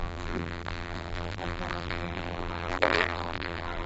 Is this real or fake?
fake